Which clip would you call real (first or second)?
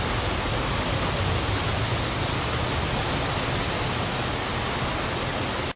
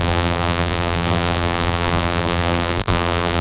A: first